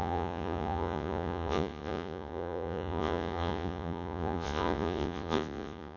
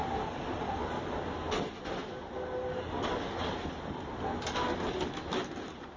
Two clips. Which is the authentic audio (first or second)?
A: second